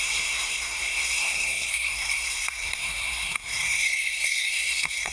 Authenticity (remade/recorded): remade